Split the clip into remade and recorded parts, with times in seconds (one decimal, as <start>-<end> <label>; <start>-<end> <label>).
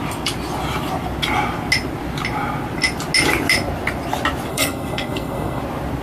0.0-4.5 recorded; 4.5-5.6 remade; 5.6-6.0 recorded